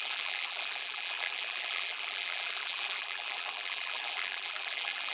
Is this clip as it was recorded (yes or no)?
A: no